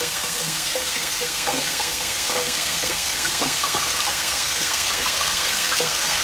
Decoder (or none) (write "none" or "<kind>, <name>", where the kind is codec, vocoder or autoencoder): codec, SNAC